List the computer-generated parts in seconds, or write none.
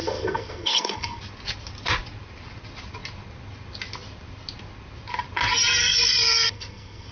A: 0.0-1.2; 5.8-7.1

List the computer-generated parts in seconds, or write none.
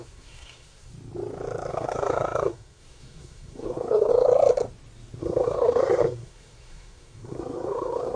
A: 0.0-0.9; 1.7-4.1; 5.2-8.2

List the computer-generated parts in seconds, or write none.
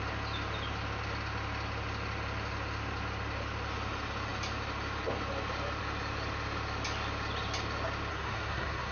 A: 8.1-8.9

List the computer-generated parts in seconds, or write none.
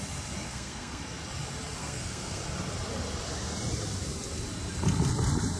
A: 0.5-1.0; 1.8-2.4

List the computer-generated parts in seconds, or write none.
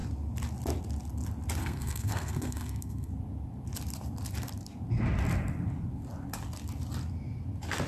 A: 1.6-3.1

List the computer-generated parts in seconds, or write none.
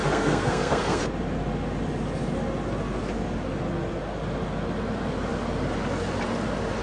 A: 0.0-1.0